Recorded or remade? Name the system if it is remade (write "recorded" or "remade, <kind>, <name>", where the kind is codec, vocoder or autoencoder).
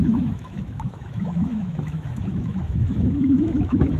remade, autoencoder, DAC-VAE